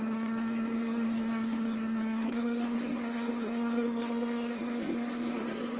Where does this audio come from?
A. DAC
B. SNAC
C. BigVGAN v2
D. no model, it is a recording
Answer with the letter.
B